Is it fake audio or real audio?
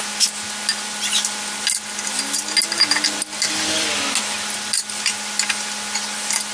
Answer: real